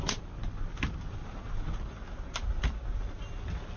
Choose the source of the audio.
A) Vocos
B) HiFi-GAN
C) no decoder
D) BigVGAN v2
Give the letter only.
C